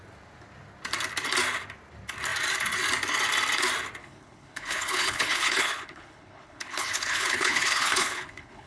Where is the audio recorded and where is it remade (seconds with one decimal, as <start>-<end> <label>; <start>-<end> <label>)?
0.0-4.0 recorded; 4.0-8.7 remade